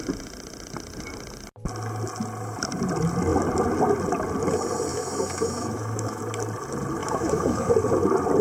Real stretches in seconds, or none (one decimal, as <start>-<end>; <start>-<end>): 0.0-4.9; 6.2-7.0; 7.7-8.4